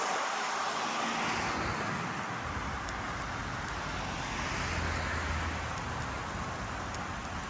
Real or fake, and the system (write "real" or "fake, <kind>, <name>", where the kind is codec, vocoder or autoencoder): real